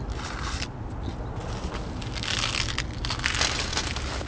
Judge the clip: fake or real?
real